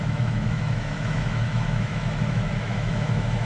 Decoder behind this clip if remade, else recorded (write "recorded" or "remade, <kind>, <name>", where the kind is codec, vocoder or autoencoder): remade, autoencoder, DAC-VAE